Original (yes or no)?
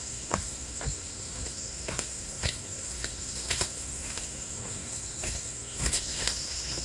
no